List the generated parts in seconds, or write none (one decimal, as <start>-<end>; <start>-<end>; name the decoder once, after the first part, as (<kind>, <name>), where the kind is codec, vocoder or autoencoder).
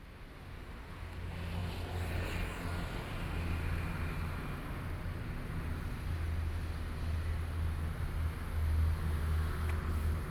none